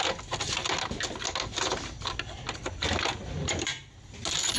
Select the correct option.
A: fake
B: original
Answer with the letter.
B